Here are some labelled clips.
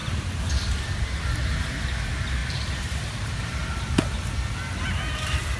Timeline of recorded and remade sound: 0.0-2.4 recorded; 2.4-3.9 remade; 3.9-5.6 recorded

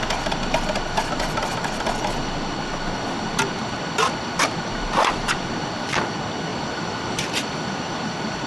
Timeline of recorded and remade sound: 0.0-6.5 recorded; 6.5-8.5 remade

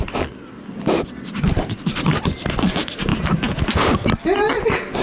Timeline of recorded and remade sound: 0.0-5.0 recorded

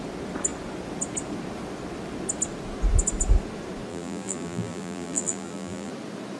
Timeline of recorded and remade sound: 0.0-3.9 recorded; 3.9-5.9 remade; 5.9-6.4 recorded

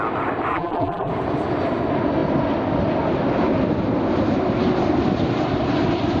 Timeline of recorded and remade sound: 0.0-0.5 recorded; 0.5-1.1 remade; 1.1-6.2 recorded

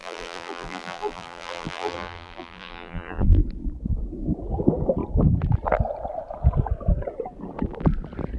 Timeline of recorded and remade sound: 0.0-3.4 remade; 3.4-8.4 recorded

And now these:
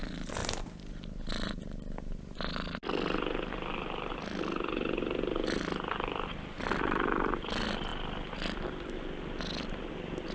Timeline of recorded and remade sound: 0.0-10.3 recorded